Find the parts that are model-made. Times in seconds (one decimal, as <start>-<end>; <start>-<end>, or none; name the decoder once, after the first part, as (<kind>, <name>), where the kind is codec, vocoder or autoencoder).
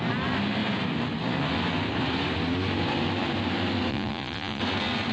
3.9-4.6 (vocoder, Vocos)